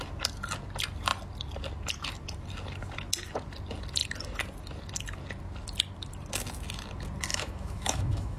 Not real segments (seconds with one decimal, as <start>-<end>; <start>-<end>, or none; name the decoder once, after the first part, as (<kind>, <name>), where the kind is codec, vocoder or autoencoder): 7.3-8.4 (autoencoder, DAC-VAE)